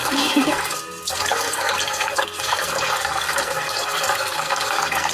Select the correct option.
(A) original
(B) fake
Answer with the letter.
B